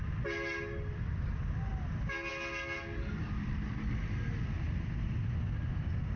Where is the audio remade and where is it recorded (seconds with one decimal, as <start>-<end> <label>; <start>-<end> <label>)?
0.0-6.2 recorded